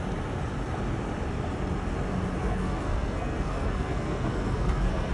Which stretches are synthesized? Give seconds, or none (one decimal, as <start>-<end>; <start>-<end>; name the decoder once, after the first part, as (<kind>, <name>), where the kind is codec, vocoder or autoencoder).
2.4-5.1 (codec, SNAC)